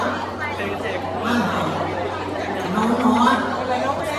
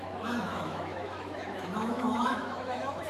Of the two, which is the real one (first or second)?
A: first